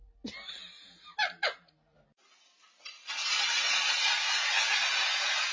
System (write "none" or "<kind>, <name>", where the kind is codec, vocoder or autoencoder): none